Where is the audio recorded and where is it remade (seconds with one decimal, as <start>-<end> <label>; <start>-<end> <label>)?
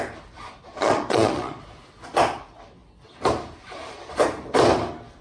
0.0-0.7 recorded; 0.7-1.6 remade; 1.6-5.2 recorded